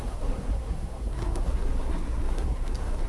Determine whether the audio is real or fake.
fake